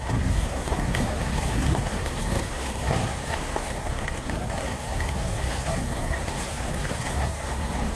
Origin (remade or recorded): remade